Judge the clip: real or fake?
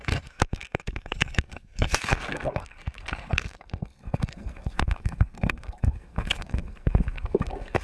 fake